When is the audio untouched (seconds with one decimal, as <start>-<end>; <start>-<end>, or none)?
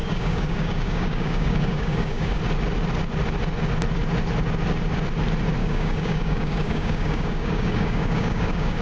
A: 2.4-5.6